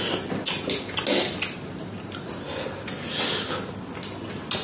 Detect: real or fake real